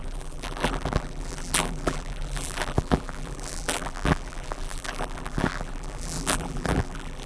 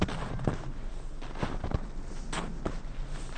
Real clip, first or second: second